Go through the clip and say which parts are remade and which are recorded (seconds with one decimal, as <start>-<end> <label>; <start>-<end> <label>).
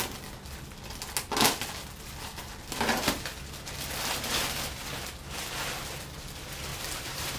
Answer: 0.0-6.7 recorded; 6.7-7.4 remade